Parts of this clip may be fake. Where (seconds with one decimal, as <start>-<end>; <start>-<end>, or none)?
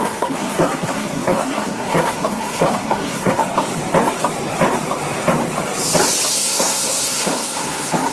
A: 0.0-3.4; 6.3-8.1